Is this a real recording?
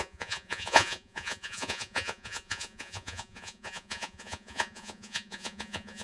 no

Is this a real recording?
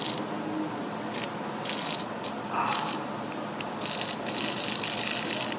yes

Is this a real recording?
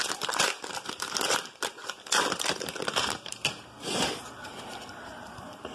no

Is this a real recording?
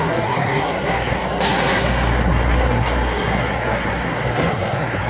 no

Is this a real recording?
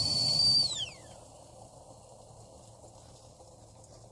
yes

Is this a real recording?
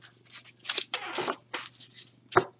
yes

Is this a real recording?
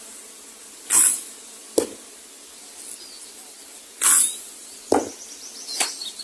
yes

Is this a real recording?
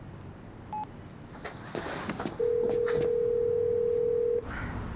yes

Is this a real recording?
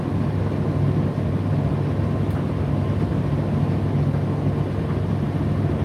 yes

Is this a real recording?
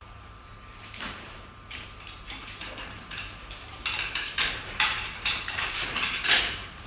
no